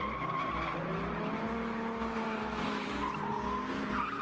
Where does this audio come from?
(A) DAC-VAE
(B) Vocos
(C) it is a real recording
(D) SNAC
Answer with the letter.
C